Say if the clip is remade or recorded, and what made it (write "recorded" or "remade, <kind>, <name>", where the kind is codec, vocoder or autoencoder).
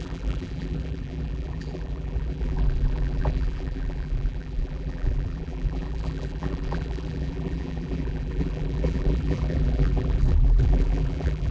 remade, vocoder, BigVGAN v2